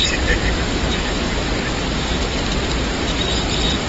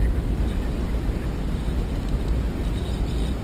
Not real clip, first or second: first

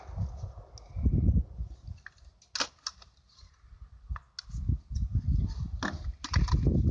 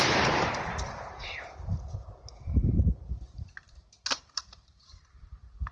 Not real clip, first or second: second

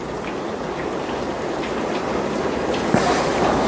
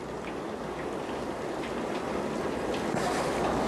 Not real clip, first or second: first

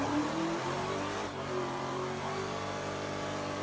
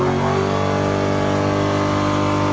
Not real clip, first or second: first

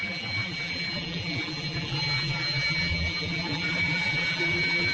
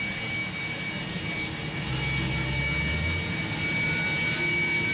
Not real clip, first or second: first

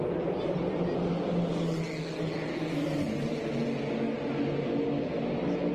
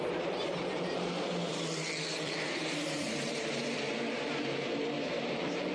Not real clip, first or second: second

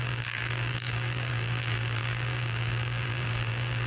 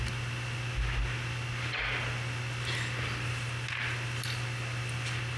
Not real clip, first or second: first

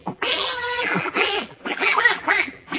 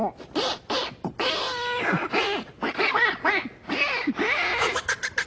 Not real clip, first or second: first